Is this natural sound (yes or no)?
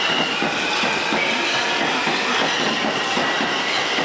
yes